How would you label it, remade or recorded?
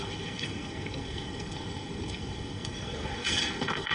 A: remade